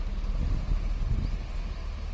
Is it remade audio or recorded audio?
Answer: recorded